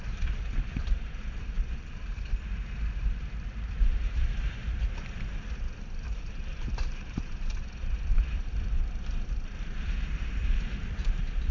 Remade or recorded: remade